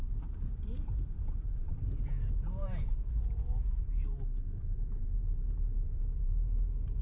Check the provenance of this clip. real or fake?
fake